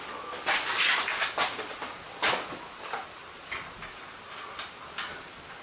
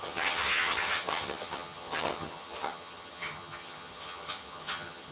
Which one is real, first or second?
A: first